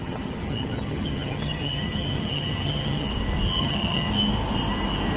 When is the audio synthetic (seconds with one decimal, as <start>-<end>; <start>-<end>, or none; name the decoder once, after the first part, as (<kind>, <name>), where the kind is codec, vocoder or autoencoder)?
0.0-3.1 (vocoder, HiFi-GAN); 3.6-4.1